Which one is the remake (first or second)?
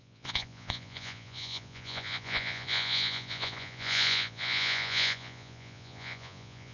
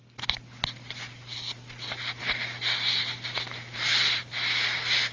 first